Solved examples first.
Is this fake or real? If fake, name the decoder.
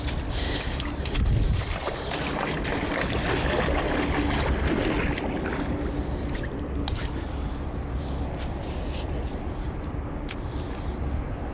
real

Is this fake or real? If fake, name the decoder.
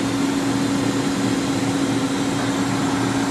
real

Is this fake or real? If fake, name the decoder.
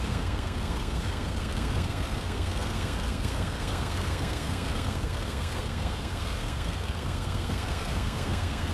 fake, codec, SNAC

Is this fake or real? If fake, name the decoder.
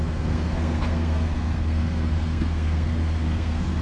fake, codec, SNAC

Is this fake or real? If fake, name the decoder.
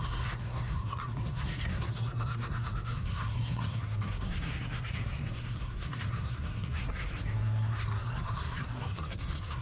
fake, codec, SNAC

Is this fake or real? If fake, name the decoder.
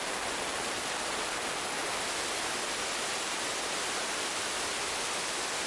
real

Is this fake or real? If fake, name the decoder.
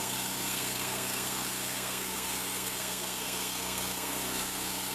fake, codec, SNAC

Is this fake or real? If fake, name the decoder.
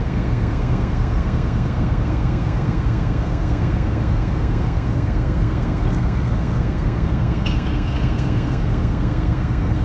fake, codec, SNAC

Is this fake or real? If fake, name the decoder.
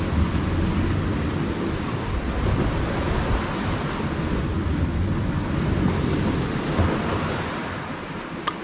real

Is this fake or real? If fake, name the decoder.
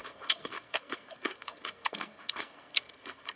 fake, codec, SNAC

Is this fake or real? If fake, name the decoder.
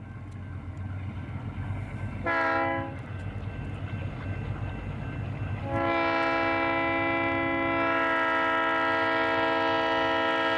real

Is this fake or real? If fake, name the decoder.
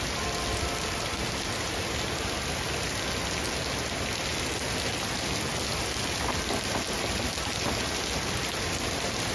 real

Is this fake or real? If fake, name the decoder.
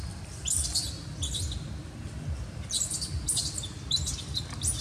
real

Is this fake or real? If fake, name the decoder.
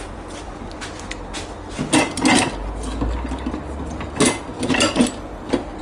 real